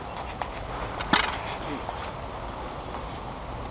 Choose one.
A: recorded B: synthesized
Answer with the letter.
A